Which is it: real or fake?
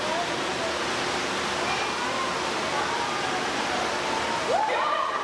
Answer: real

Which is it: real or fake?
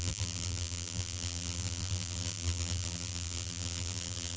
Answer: fake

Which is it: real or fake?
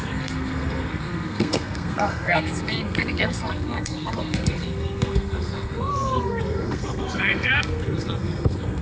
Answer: fake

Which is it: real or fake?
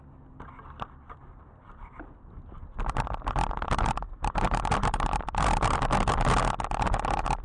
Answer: real